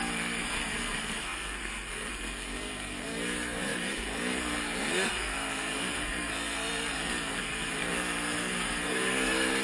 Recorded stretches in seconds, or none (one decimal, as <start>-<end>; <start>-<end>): none